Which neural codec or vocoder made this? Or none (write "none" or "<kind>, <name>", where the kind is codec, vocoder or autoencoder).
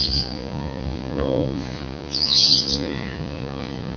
vocoder, Vocos